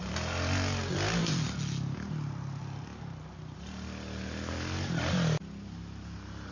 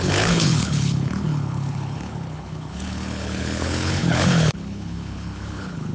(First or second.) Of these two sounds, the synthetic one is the second